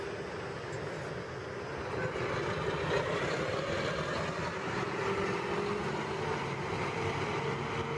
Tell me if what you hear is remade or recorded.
recorded